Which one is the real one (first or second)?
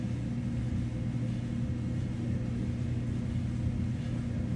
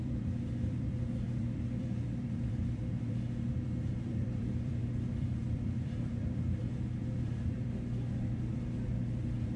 first